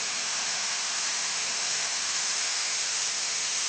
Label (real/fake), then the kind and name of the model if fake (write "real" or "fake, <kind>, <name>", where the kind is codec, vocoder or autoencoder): fake, autoencoder, DAC-VAE